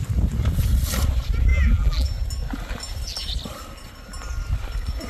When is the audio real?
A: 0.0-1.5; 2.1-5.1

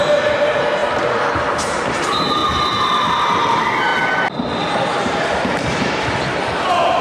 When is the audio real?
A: 0.8-1.5; 2.4-3.5; 3.9-5.0

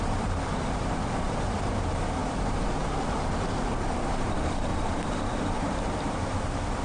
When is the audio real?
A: 0.5-1.1; 2.2-3.0; 4.7-5.2

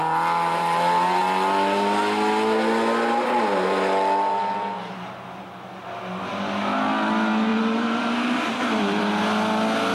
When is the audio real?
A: 0.0-7.5; 9.0-9.9

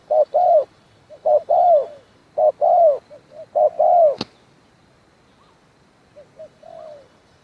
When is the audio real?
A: 2.2-6.4

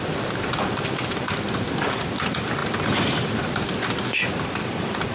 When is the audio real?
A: none

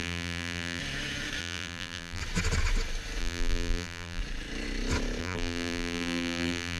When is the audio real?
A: 0.8-1.4; 2.2-3.2; 4.2-5.2